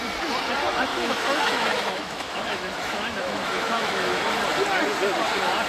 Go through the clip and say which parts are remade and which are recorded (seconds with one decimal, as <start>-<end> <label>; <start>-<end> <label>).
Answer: 0.0-0.9 recorded; 0.9-4.3 remade; 4.3-5.7 recorded